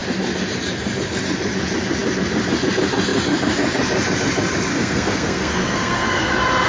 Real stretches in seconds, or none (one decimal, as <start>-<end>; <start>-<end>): 0.0-4.7; 6.3-6.7

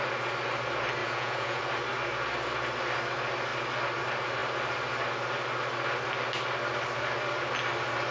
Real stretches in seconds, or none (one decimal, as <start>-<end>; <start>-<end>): 0.0-1.0; 1.6-8.1

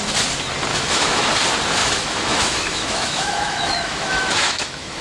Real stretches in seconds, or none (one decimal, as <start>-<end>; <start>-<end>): 0.0-0.7; 1.3-1.8

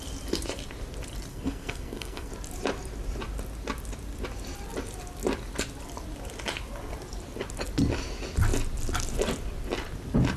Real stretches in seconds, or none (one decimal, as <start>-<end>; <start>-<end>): 0.0-1.3; 2.3-10.4

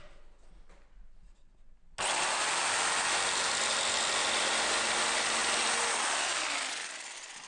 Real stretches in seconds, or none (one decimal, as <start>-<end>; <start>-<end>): 0.0-7.5